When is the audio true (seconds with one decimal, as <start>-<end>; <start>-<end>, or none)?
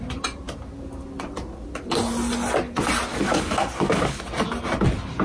0.0-3.1; 4.2-5.2